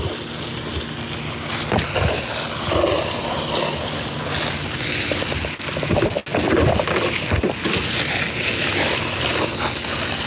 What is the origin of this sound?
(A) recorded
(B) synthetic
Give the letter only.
A